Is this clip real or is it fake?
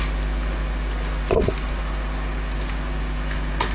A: real